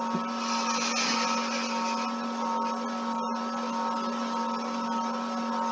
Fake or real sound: real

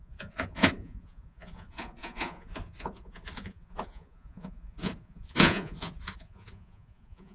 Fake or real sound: fake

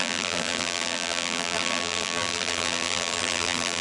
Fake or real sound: fake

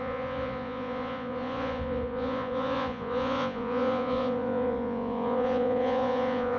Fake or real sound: fake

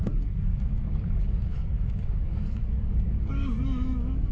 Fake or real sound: fake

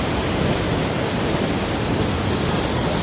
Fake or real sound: real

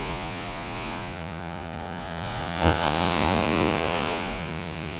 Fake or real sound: fake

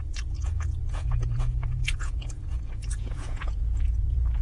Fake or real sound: fake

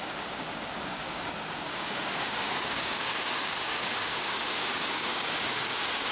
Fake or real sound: fake